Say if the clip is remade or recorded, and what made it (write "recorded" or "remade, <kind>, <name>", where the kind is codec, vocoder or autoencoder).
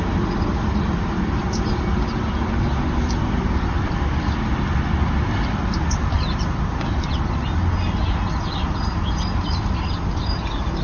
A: recorded